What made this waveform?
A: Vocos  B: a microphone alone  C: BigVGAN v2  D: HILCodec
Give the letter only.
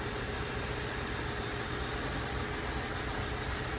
B